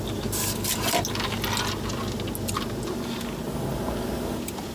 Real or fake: real